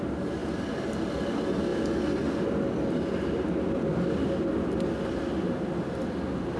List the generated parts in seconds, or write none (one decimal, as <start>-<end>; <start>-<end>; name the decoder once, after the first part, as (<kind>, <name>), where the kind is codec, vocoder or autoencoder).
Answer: none